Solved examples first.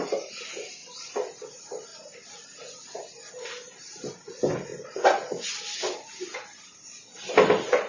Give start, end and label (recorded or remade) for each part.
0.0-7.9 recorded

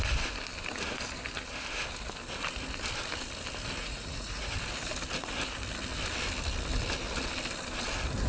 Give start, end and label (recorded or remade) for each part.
0.0-3.8 recorded; 3.8-4.5 remade; 4.5-8.3 recorded

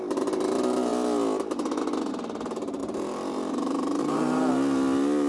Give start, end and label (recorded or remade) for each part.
0.0-2.8 recorded; 2.8-4.5 remade; 4.5-5.3 recorded

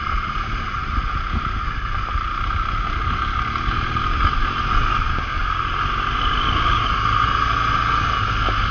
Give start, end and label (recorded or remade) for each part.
0.0-5.1 recorded; 5.1-5.6 remade; 5.6-8.7 recorded

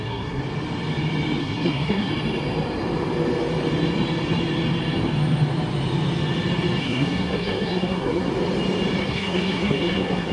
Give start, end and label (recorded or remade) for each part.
0.0-0.4 remade; 0.4-1.4 recorded; 1.4-2.1 remade; 2.1-6.8 recorded; 6.8-8.3 remade; 8.3-9.0 recorded; 9.0-10.3 remade

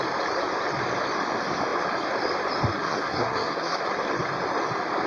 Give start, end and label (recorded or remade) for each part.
0.0-2.7 recorded; 2.7-3.8 remade; 3.8-5.1 recorded

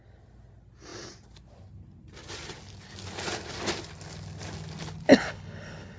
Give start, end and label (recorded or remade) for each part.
0.0-5.1 recorded; 5.1-6.0 remade